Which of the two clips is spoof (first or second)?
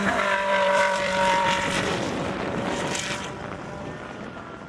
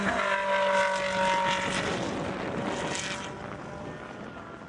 first